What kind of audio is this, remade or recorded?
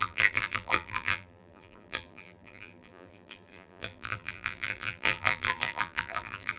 remade